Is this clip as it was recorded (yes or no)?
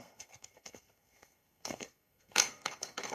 no